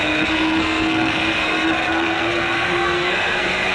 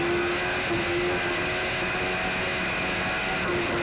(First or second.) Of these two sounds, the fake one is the first